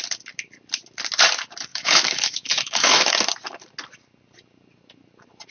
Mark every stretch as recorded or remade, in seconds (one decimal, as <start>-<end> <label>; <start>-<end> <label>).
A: 0.0-1.7 recorded; 1.7-3.1 remade; 3.1-5.5 recorded